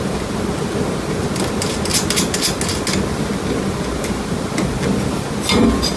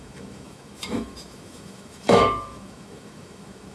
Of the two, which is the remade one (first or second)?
second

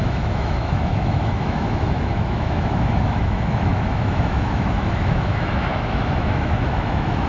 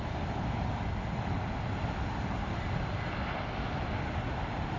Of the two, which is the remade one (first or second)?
first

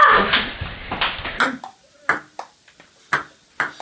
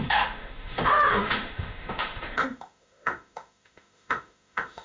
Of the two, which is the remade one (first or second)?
second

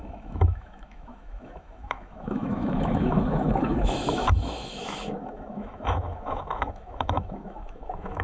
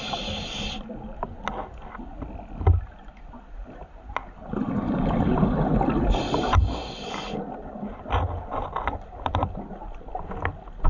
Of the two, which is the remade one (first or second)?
first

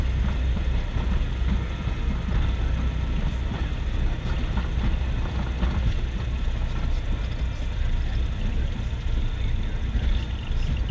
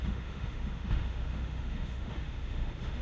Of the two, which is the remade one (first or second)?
second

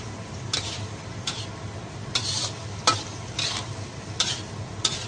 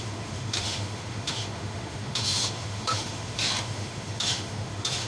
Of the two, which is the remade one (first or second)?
second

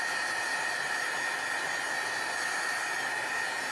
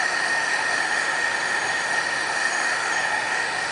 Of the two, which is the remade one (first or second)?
second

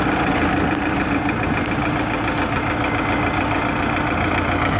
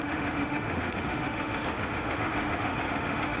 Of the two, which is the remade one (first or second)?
second